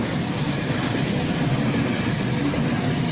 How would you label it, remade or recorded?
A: recorded